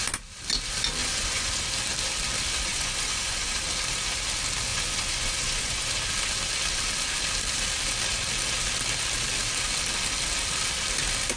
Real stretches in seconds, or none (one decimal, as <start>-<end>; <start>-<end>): 0.0-1.0; 1.6-2.7; 3.6-4.7; 5.9-11.4